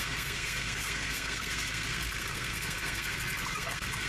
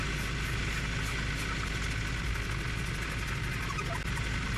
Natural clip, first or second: second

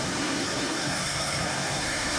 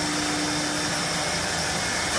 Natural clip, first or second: second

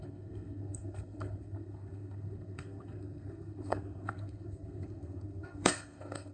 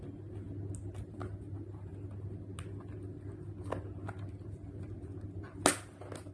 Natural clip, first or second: second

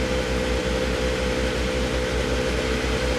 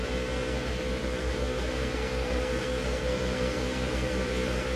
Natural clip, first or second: first